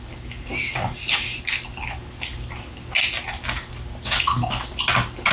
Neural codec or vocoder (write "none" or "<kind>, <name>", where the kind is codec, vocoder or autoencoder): none